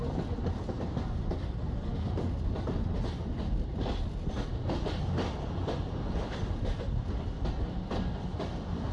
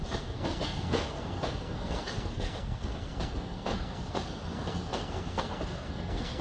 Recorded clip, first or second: first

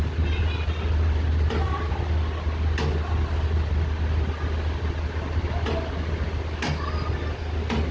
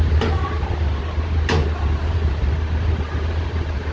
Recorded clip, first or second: first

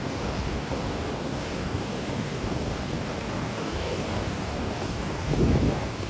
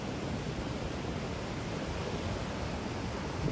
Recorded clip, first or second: second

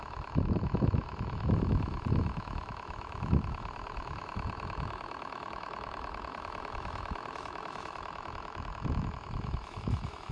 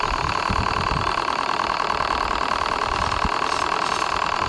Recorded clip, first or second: second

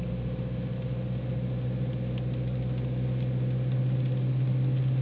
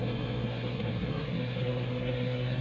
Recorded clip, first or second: first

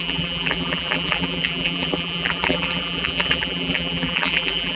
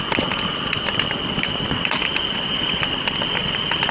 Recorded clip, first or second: second